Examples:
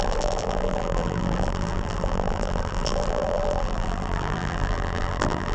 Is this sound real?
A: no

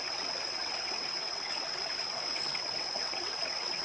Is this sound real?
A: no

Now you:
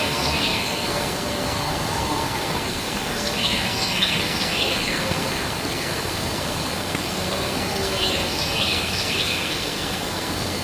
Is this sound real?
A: no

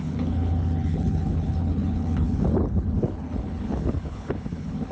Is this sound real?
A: no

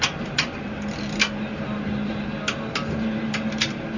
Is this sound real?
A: yes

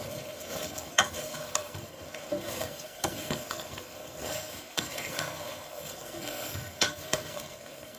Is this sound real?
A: no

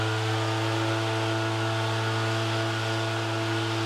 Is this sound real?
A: yes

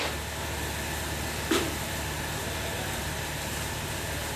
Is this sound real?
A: yes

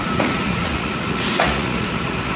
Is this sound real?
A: no